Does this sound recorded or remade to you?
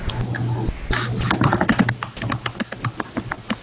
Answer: recorded